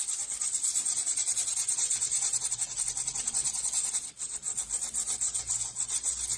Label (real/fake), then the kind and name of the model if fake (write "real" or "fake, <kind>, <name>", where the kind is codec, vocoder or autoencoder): real